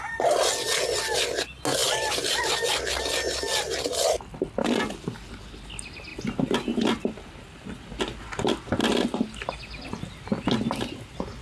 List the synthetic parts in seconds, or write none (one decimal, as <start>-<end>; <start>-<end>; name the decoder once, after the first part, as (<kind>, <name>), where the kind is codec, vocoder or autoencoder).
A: none